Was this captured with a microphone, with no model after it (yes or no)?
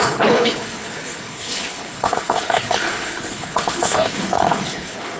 no